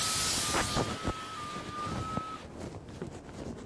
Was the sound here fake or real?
real